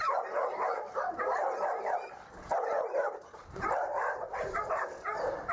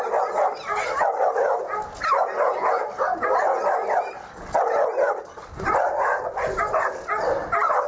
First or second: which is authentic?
second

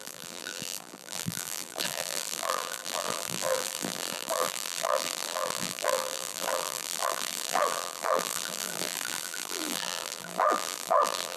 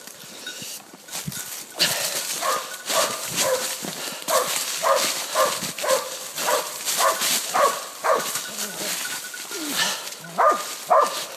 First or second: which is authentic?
second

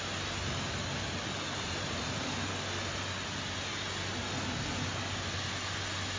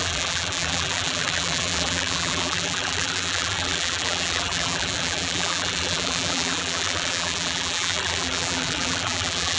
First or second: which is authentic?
first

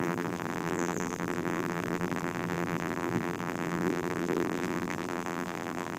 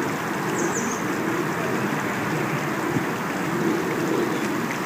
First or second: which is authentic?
second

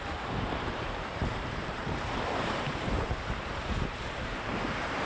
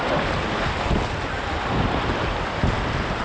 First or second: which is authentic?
second